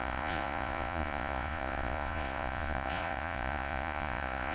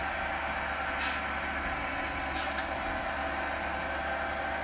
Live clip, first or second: second